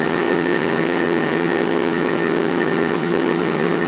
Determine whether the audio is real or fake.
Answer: fake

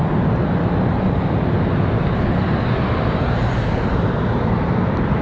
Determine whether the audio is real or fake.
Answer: real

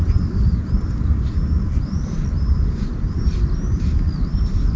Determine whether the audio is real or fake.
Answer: real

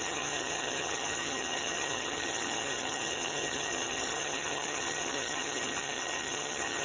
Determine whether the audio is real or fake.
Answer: fake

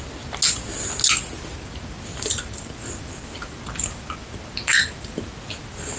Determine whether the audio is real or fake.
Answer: real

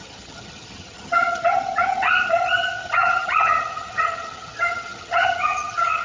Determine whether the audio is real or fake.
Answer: fake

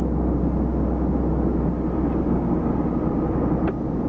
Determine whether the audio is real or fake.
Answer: real